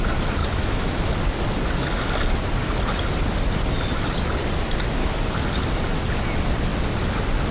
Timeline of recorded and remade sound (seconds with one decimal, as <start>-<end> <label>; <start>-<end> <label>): 0.0-0.4 recorded; 0.4-1.1 remade; 1.1-7.5 recorded